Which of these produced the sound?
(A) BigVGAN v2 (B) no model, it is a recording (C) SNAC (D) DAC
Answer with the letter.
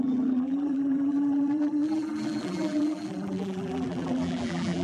A